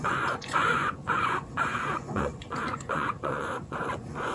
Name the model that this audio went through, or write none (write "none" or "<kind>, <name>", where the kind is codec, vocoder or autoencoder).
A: vocoder, Vocos